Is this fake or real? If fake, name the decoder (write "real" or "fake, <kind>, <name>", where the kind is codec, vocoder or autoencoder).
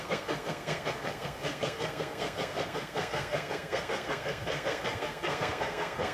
fake, codec, SNAC